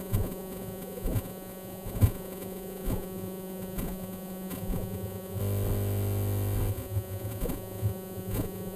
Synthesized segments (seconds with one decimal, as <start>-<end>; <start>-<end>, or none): 0.0-5.4; 6.7-8.8